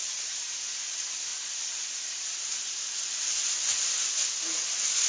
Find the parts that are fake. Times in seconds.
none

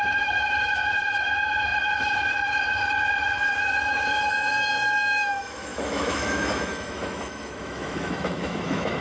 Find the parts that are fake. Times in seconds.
0.0-9.0 (autoencoder, DAC-VAE)

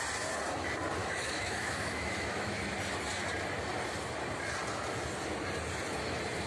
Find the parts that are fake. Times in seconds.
1.0-2.6 (autoencoder, DAC-VAE)

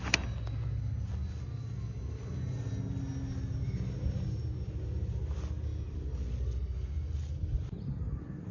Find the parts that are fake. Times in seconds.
none